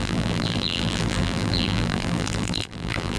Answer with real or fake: fake